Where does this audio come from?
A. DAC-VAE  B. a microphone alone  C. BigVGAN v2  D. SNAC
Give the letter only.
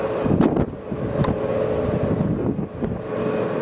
B